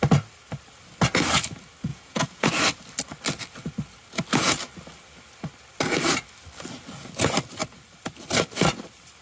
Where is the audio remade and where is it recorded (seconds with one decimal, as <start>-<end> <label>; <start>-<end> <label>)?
0.0-1.9 recorded; 1.9-2.5 remade; 2.5-9.2 recorded

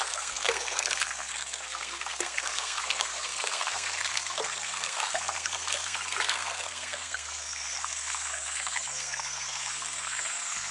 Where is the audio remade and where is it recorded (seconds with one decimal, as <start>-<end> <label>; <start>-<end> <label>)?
0.0-10.7 remade

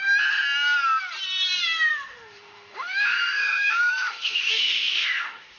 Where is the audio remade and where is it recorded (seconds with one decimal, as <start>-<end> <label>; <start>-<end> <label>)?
0.0-1.9 recorded; 1.9-5.6 remade

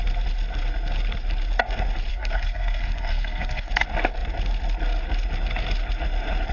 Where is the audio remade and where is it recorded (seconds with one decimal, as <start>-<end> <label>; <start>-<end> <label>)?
0.0-2.1 recorded; 2.1-3.7 remade; 3.7-6.5 recorded